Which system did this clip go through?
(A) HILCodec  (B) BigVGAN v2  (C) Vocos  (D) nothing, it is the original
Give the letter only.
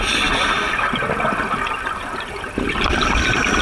D